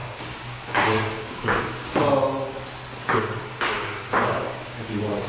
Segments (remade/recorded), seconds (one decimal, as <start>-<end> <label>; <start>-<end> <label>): 0.0-2.0 remade; 2.0-3.0 recorded; 3.0-5.3 remade